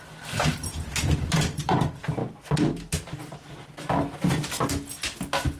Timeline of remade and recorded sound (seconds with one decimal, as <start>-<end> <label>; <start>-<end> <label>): 0.0-2.2 remade; 2.2-5.6 recorded